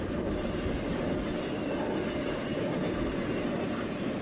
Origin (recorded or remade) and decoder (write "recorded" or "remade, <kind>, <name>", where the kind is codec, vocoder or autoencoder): recorded